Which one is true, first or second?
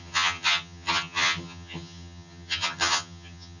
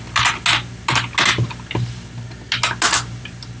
second